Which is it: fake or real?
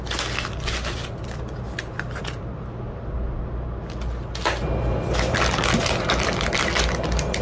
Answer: real